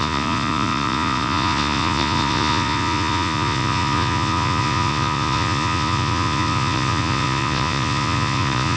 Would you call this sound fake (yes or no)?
yes